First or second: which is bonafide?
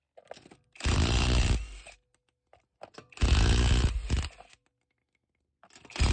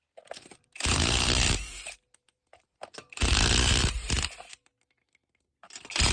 first